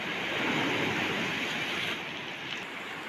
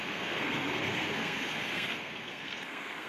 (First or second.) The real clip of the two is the first